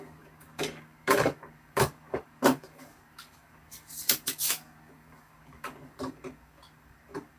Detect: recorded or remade remade